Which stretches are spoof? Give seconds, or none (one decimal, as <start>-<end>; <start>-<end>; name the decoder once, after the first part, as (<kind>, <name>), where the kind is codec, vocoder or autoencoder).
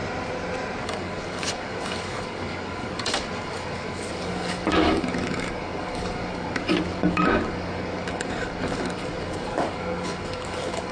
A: 0.8-10.9 (codec, DAC)